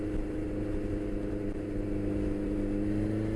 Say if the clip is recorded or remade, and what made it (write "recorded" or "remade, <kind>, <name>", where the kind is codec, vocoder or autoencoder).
recorded